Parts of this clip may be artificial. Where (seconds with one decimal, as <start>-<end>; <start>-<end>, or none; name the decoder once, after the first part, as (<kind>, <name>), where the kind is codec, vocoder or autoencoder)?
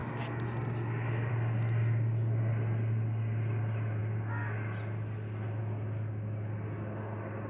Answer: none